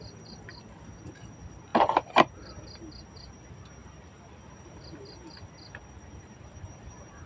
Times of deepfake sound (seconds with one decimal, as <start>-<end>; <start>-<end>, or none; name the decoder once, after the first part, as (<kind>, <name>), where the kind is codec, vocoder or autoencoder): 1.7-2.4 (vocoder, BigVGAN v2); 3.8-7.3